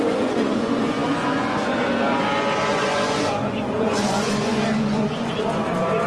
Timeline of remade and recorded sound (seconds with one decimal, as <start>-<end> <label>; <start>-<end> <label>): 0.0-6.1 remade